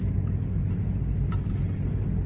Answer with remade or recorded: recorded